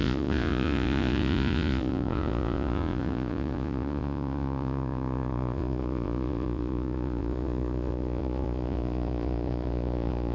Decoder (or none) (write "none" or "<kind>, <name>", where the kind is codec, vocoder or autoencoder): vocoder, Vocos